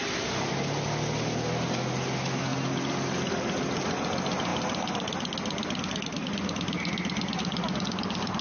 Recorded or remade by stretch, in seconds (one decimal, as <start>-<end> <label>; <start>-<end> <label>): 0.0-8.4 recorded